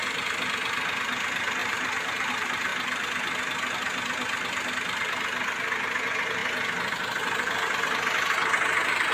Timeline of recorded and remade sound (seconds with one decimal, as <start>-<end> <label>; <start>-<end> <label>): 0.0-1.6 recorded; 1.6-2.3 remade; 2.3-9.1 recorded